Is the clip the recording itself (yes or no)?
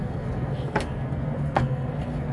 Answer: no